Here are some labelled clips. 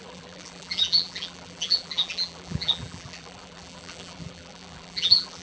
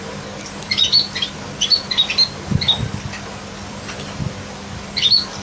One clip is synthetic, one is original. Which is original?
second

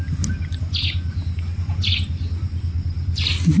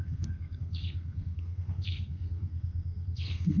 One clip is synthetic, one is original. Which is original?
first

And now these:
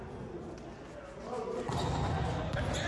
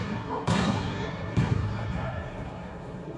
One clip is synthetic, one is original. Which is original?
first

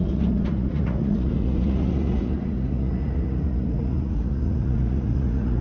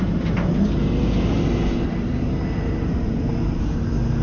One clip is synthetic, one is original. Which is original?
second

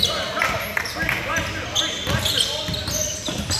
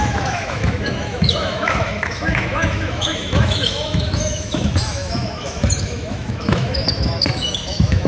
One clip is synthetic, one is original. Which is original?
first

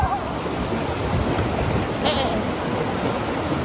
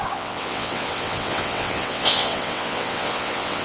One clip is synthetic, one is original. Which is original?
first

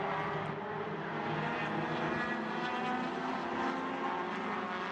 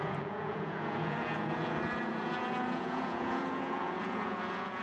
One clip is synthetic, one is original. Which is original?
first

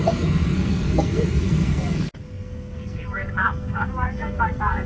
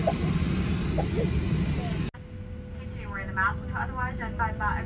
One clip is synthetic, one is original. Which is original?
second